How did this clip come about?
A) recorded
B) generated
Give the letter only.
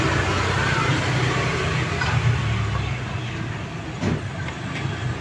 A